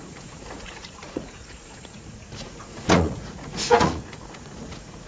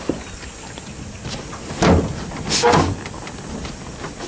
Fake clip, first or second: first